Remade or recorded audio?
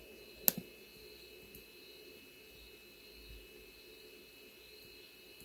recorded